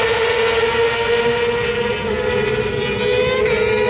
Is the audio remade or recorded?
recorded